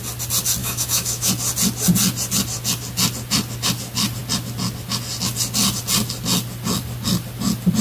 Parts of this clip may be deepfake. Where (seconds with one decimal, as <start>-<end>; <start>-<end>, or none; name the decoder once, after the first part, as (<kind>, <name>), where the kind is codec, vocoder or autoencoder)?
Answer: 0.6-1.3 (autoencoder, DAC-VAE)